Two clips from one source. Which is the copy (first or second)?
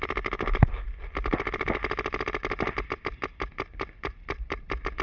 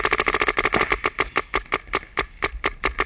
first